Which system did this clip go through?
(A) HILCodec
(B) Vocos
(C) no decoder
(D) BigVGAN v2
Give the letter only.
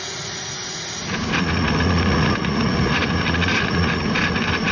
B